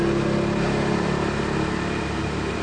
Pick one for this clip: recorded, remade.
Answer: recorded